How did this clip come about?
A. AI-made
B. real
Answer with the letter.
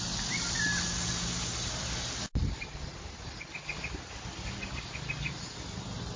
B